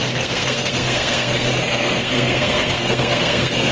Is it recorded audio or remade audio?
remade